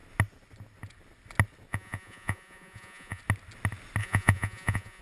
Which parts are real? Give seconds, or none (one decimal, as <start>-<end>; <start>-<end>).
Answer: 0.0-1.7; 3.2-4.0